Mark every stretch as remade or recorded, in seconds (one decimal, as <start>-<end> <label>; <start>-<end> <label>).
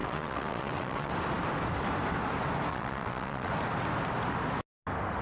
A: 0.0-1.1 remade; 1.1-2.7 recorded; 2.7-3.5 remade; 3.5-5.2 recorded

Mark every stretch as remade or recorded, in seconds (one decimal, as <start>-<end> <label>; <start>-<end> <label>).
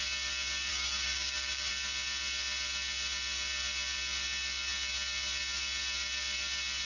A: 0.0-0.7 recorded; 0.7-1.7 remade; 1.7-6.8 recorded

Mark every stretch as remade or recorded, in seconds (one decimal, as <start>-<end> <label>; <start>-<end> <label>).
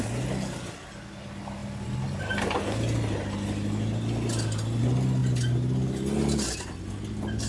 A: 0.0-7.5 recorded